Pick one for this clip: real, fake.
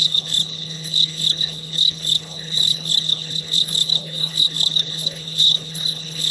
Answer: fake